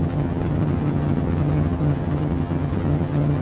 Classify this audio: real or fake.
fake